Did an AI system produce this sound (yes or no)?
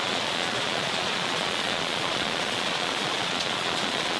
yes